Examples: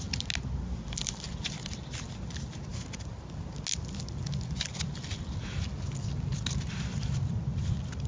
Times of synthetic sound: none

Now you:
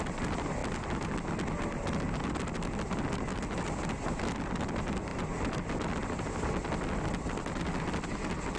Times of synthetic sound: none